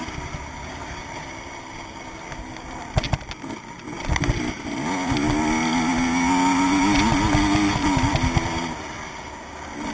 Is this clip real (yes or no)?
yes